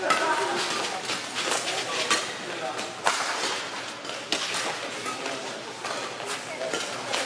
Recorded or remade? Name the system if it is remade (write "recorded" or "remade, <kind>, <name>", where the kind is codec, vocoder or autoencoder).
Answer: recorded